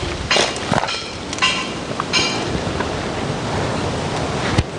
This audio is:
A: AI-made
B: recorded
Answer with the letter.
B